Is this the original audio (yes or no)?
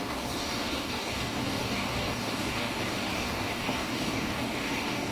no